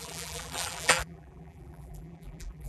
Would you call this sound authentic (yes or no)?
no